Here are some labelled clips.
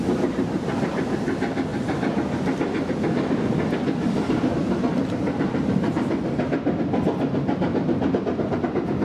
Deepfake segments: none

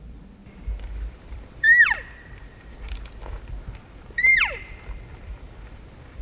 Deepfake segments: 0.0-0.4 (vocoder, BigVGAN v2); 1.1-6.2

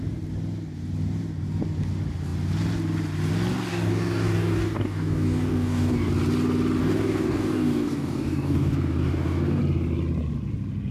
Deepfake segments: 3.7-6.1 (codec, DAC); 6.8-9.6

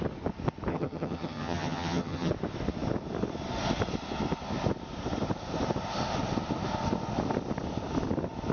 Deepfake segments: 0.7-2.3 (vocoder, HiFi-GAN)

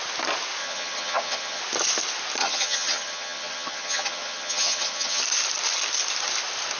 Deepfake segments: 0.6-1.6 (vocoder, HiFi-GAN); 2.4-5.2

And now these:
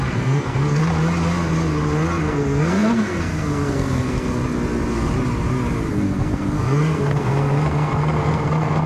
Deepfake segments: 0.0-0.8 (codec, SNAC); 2.2-4.4; 5.9-8.9